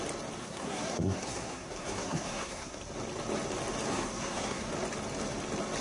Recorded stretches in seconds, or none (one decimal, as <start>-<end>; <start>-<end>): 0.0-0.4; 2.8-3.9; 4.7-5.8